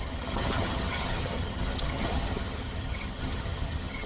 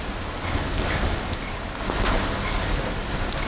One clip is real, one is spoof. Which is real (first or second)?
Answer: second